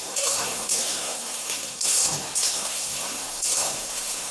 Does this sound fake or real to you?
fake